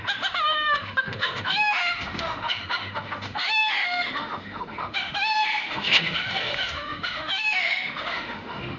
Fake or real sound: fake